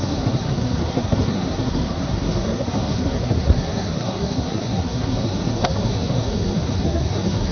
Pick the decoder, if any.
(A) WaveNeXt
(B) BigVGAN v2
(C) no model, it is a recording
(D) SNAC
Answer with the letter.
D